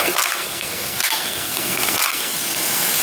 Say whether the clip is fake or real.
fake